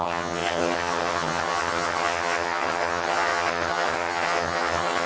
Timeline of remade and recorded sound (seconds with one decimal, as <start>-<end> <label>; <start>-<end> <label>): 0.0-5.1 remade